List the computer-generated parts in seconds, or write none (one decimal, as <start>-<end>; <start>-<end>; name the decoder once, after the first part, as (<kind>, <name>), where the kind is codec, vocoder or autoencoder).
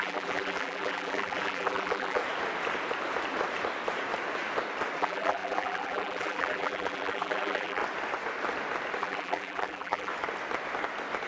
0.0-2.2 (vocoder, BigVGAN v2); 5.0-7.8; 9.0-10.1